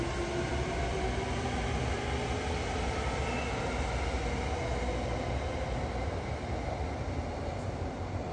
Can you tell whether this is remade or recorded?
recorded